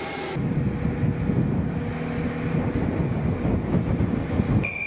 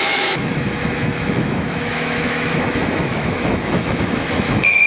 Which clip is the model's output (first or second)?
second